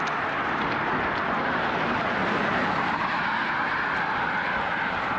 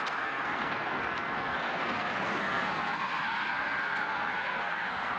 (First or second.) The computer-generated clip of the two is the second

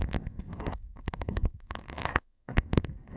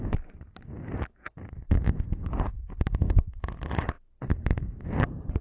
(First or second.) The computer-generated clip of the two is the first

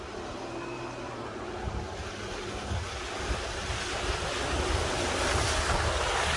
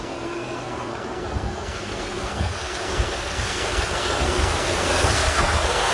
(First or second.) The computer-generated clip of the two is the second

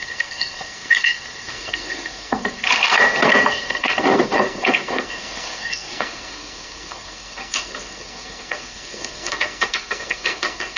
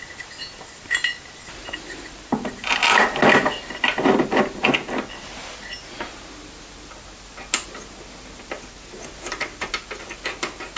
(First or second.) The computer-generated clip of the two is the first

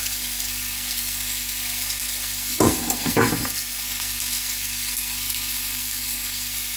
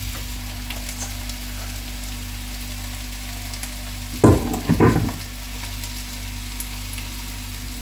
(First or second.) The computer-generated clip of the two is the first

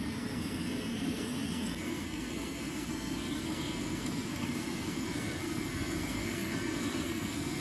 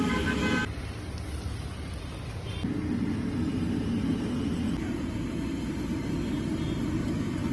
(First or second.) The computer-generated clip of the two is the first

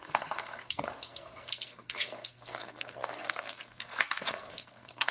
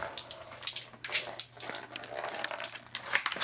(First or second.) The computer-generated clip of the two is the first